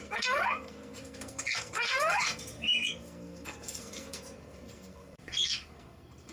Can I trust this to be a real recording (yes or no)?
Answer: no